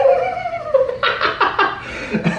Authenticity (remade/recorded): recorded